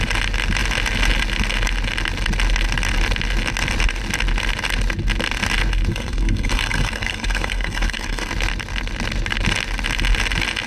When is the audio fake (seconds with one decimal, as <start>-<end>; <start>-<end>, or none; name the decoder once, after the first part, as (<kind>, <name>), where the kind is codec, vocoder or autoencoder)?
5.9-8.3 (codec, SNAC)